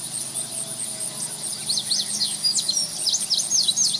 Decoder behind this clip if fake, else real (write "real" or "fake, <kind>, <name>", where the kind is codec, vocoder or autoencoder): real